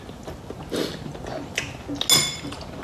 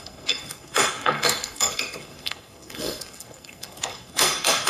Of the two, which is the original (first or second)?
first